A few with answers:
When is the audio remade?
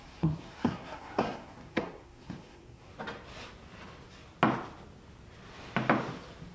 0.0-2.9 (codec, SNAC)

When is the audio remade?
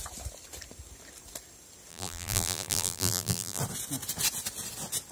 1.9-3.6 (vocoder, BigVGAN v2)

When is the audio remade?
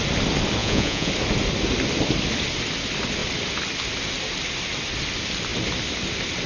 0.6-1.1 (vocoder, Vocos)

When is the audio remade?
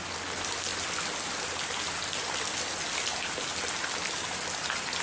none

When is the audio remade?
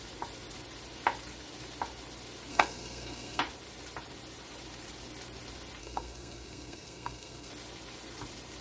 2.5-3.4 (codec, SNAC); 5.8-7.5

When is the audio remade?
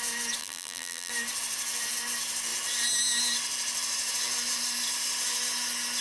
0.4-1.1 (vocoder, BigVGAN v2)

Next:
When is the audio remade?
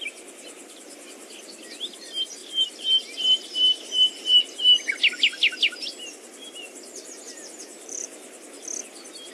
2.4-4.4 (vocoder, BigVGAN v2); 7.7-8.4